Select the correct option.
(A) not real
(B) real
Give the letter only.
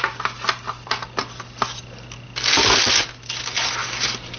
B